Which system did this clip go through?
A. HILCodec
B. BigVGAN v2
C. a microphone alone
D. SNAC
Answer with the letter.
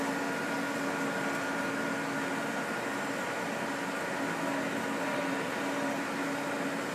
C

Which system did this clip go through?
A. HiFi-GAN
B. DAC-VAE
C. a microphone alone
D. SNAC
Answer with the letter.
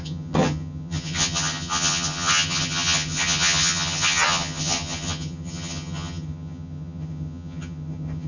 A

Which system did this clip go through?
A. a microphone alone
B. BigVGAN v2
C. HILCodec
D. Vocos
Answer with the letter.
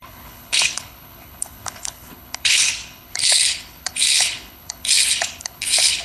C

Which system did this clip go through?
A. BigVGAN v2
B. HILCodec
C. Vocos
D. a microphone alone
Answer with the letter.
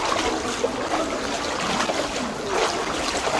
D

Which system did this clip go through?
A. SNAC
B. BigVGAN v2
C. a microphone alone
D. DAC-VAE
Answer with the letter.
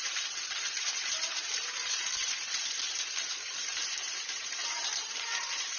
B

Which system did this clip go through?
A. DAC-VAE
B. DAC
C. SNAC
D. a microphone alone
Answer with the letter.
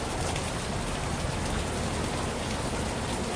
D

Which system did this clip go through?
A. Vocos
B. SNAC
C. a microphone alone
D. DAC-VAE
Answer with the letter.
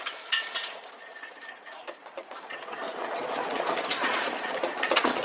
A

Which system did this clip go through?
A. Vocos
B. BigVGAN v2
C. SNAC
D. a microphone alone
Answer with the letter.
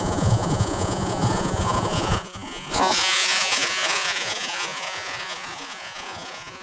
A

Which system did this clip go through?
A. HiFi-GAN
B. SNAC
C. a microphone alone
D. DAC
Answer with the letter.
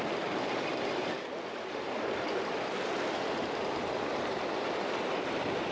C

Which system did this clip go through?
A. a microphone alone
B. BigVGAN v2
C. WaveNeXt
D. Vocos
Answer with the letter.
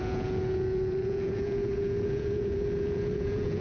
D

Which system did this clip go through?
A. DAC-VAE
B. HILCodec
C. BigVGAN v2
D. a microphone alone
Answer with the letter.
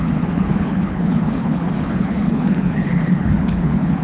B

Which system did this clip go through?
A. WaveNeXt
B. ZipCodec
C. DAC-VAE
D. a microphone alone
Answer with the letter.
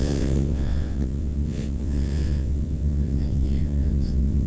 A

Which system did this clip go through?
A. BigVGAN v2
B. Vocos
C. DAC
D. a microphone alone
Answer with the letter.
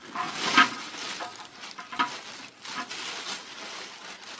D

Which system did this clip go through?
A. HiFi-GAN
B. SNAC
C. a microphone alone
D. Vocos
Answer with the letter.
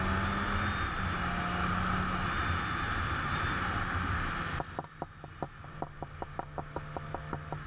C